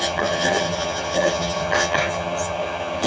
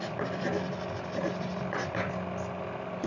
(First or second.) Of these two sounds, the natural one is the second